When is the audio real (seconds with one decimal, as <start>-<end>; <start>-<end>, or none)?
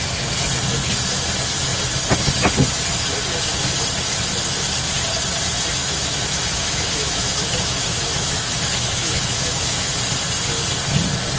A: 0.0-5.8; 9.9-11.4